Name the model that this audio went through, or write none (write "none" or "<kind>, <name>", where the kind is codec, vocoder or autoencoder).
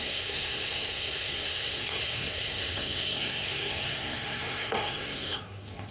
codec, SNAC